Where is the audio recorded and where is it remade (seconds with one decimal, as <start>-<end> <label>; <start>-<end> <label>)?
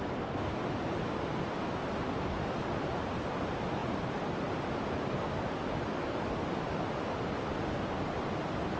0.0-8.8 recorded